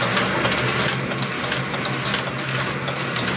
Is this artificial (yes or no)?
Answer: no